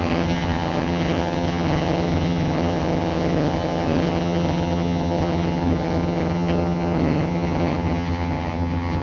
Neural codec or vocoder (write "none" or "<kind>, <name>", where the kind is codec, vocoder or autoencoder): vocoder, HiFi-GAN